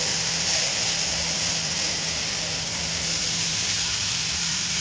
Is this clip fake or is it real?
real